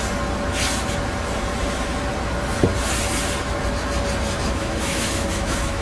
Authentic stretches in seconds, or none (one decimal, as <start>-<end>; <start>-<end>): 0.0-4.4